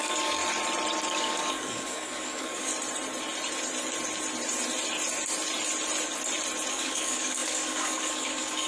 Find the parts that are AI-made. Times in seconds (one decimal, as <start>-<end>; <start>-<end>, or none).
0.0-0.4; 1.1-2.7; 6.7-8.7